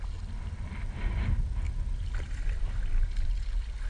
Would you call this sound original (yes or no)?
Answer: yes